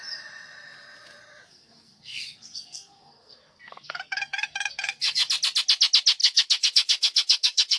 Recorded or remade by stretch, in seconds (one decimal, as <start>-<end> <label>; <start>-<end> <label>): 0.0-1.5 recorded; 1.5-5.3 remade; 5.3-6.2 recorded; 6.2-7.8 remade